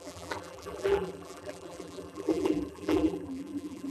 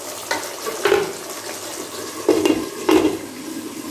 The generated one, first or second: first